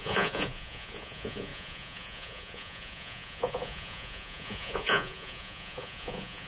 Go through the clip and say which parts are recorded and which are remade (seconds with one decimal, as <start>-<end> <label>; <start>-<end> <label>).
0.0-6.5 remade